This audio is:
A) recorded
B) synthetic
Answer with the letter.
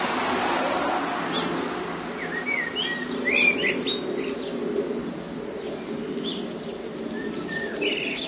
A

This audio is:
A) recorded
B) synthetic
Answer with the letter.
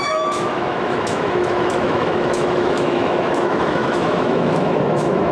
B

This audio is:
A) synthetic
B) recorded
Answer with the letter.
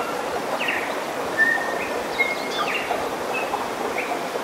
B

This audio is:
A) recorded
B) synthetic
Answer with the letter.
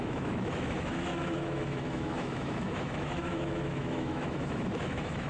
B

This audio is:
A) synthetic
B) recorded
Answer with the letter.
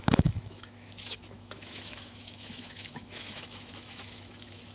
A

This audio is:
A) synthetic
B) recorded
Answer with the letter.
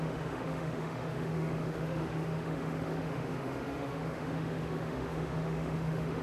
A